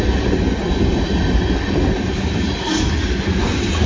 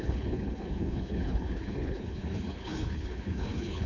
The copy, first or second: second